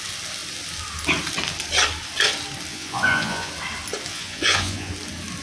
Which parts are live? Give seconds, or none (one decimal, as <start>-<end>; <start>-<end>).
0.0-2.7; 3.5-4.1; 4.9-5.4